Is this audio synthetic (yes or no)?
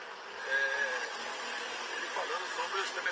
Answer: no